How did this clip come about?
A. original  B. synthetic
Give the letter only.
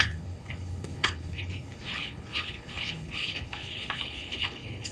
B